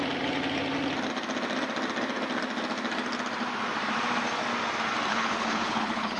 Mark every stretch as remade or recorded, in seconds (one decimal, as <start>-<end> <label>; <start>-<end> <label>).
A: 0.0-5.1 recorded; 5.1-6.2 remade